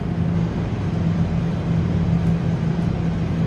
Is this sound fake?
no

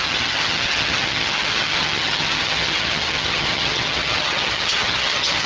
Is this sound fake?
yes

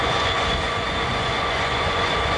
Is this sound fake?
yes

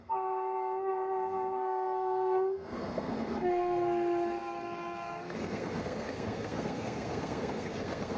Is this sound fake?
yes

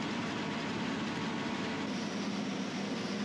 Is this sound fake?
no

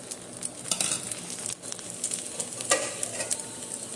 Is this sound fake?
no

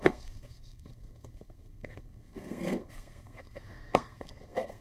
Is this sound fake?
yes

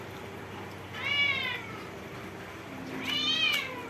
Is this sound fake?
yes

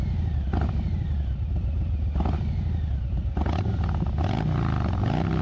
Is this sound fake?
no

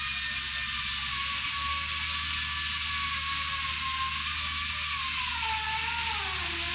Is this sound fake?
no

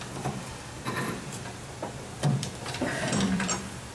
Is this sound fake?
yes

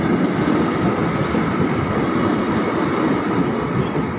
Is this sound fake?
no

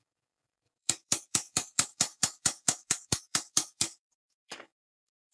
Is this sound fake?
yes